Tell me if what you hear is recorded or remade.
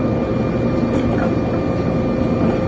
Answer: recorded